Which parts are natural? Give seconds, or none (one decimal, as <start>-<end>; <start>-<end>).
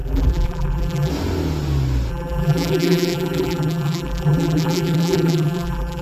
1.1-2.1